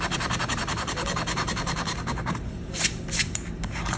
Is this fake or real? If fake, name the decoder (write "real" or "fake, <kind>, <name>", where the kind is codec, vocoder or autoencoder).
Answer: fake, vocoder, BigVGAN v2